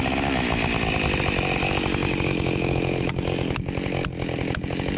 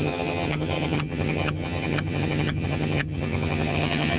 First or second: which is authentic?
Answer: first